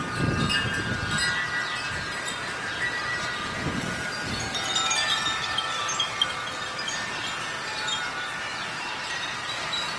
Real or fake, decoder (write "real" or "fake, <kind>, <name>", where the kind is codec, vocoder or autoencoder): fake, vocoder, BigVGAN v2